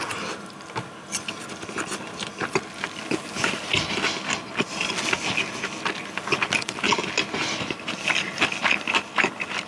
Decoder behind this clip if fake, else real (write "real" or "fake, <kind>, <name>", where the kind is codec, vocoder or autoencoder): real